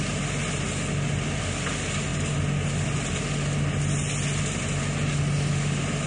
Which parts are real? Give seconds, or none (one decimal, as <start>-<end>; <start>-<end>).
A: 0.0-6.1